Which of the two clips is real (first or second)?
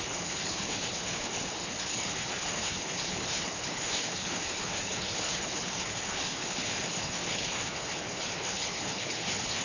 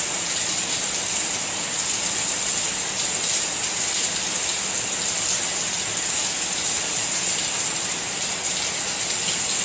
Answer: second